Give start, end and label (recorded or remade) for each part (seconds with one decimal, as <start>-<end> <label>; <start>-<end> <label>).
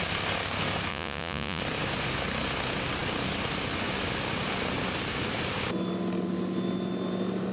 0.0-0.9 recorded; 0.9-1.6 remade; 1.6-7.5 recorded